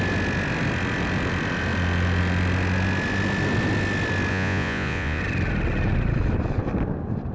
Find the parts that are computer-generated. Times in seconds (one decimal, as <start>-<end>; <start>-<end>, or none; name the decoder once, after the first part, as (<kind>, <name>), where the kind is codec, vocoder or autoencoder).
4.3-5.2 (vocoder, Vocos)